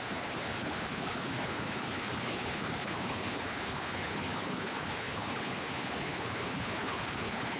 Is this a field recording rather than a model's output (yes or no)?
no